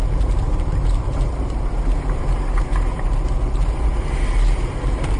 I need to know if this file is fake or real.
fake